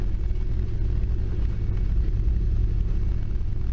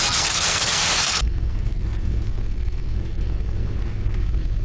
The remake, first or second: second